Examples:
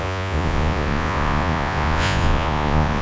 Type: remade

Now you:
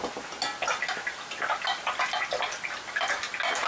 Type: recorded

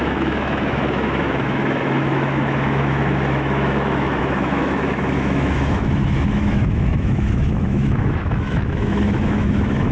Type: remade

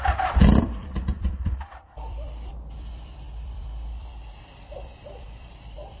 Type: remade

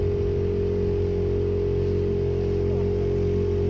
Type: recorded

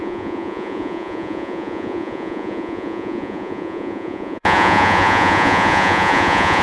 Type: remade